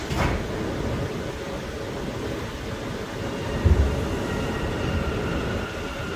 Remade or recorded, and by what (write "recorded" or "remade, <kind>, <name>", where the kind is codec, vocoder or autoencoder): recorded